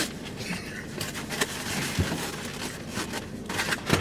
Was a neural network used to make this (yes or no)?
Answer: no